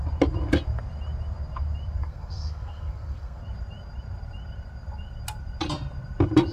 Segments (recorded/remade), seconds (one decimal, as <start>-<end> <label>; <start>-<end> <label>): 0.0-2.0 recorded; 2.0-3.4 remade; 3.4-6.5 recorded